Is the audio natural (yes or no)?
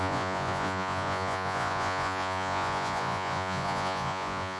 no